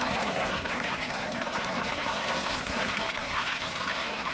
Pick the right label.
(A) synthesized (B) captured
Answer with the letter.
A